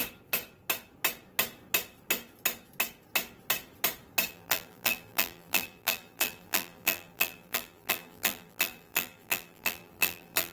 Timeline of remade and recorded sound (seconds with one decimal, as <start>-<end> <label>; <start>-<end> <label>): 0.0-4.3 recorded; 4.3-10.5 remade